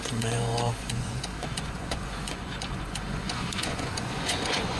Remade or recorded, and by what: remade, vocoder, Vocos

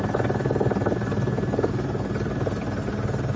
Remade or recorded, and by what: recorded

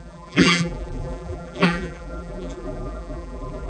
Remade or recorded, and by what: remade, vocoder, BigVGAN v2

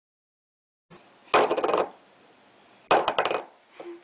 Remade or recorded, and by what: recorded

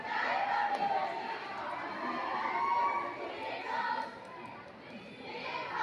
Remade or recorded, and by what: recorded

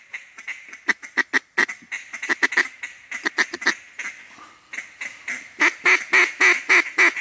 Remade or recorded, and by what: recorded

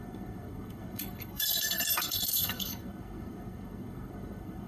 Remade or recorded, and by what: remade, codec, SNAC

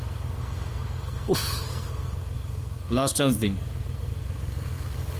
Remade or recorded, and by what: remade, codec, SNAC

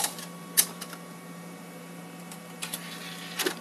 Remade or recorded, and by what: remade, vocoder, BigVGAN v2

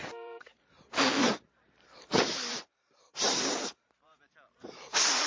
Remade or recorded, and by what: remade, vocoder, BigVGAN v2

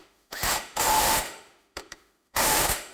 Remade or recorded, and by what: remade, autoencoder, DAC-VAE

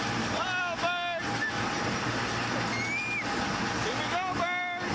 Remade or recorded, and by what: recorded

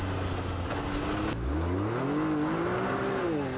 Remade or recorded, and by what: recorded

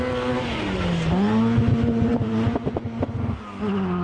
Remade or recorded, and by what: recorded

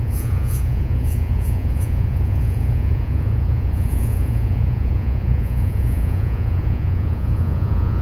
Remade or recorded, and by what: remade, vocoder, Vocos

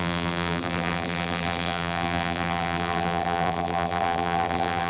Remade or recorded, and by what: remade, vocoder, BigVGAN v2